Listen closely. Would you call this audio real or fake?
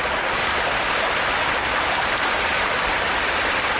real